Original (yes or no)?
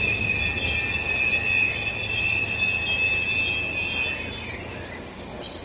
yes